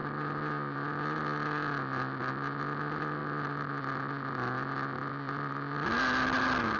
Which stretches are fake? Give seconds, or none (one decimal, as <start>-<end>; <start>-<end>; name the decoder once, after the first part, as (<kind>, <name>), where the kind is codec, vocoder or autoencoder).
none